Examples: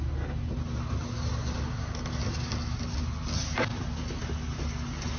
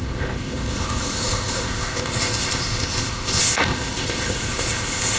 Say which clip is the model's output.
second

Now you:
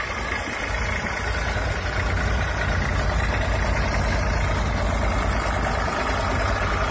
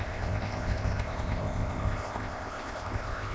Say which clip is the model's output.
second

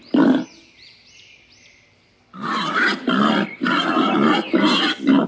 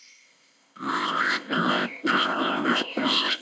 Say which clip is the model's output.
second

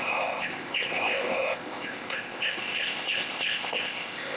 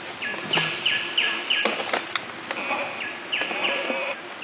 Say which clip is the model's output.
first